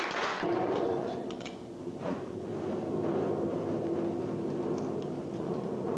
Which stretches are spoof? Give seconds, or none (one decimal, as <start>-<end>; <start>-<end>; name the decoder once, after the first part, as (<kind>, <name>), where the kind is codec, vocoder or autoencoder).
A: 0.0-2.5 (vocoder, Vocos); 5.2-6.0